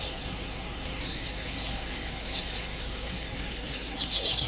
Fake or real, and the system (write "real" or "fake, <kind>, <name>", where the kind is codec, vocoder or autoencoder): fake, codec, SNAC